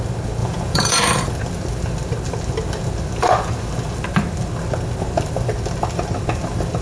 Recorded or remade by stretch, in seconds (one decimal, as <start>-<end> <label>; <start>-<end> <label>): 0.0-0.4 recorded; 0.4-1.0 remade; 1.0-6.8 recorded